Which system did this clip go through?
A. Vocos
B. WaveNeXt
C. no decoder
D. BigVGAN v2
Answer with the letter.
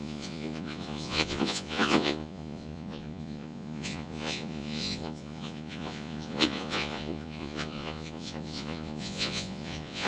A